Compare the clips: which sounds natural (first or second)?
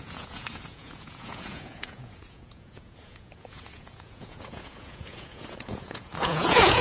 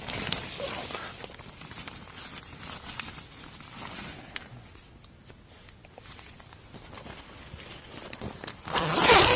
second